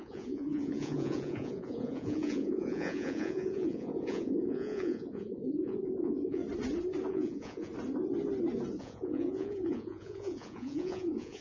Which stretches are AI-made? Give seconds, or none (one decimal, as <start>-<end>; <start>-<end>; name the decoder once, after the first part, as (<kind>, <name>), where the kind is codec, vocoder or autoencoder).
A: 0.0-6.4 (vocoder, Vocos); 7.1-7.7; 8.8-11.4